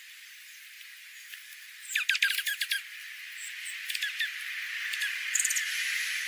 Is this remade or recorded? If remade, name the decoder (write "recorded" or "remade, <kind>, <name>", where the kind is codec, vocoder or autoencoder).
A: remade, vocoder, BigVGAN v2